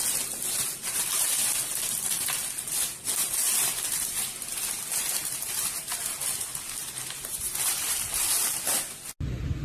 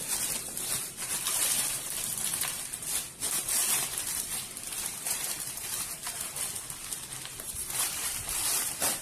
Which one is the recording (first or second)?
first